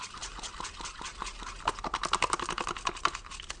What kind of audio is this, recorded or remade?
recorded